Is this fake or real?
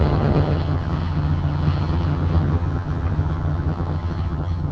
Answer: fake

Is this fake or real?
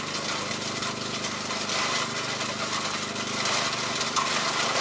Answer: real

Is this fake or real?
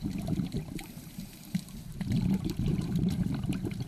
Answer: fake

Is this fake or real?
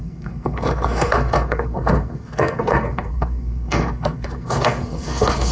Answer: fake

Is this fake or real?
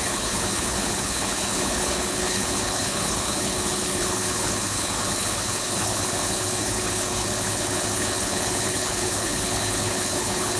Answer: fake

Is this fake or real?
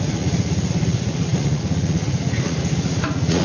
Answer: fake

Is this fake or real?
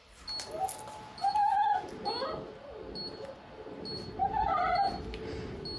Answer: real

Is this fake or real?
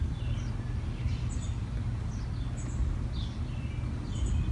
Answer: real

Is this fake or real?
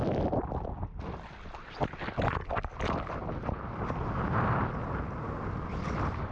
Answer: real